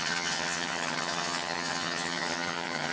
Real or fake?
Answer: fake